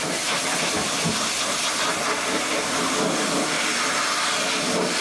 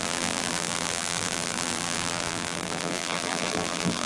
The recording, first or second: first